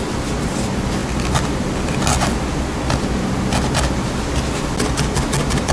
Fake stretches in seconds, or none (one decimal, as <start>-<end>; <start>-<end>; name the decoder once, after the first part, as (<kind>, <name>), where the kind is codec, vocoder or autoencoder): 1.0-2.0 (vocoder, BigVGAN v2)